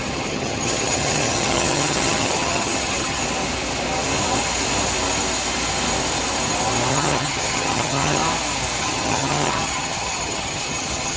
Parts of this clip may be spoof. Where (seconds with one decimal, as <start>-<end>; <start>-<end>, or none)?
0.0-3.2; 6.9-8.2; 8.8-11.2